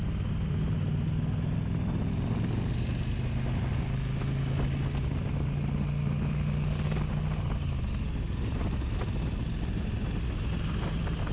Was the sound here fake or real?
real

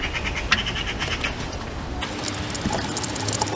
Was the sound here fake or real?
real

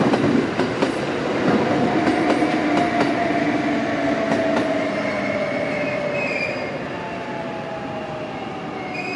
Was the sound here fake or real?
real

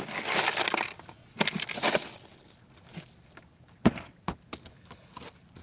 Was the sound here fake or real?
real